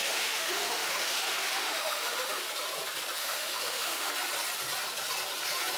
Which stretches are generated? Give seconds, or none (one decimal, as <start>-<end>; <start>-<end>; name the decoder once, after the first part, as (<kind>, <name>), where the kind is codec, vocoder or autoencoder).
0.0-2.4 (autoencoder, DAC-VAE); 3.2-4.1